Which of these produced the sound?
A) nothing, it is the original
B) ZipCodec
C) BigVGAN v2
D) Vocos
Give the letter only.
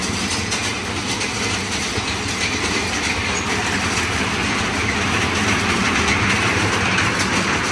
A